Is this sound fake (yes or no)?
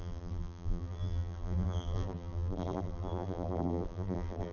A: yes